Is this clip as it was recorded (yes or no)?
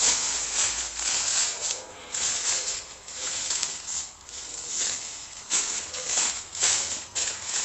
no